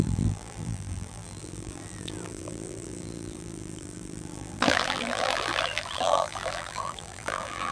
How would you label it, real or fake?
fake